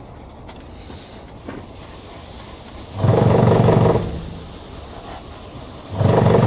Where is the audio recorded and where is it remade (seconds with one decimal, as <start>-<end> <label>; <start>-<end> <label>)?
0.0-3.1 recorded; 3.1-4.0 remade; 4.0-6.5 recorded